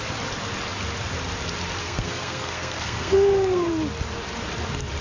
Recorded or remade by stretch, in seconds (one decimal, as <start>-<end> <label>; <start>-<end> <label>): 0.0-1.8 recorded; 1.8-3.7 remade; 3.7-5.0 recorded